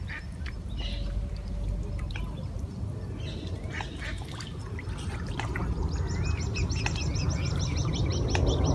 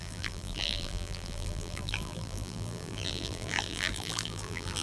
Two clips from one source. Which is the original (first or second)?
first